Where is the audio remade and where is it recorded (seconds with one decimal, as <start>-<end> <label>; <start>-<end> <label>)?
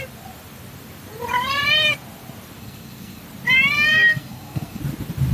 0.0-2.6 recorded; 2.6-3.2 remade; 3.2-3.9 recorded; 3.9-4.8 remade; 4.8-5.3 recorded